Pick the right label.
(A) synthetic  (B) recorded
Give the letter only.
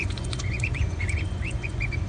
A